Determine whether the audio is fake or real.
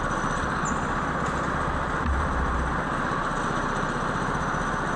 real